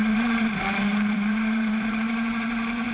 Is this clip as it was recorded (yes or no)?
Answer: no